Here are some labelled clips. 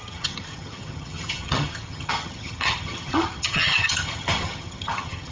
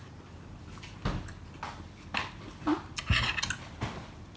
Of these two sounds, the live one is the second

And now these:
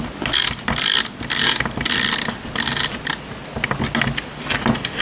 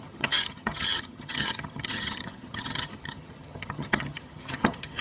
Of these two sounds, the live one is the first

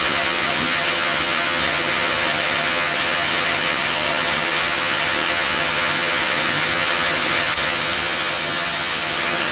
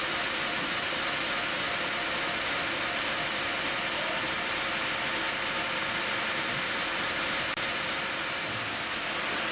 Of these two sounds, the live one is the second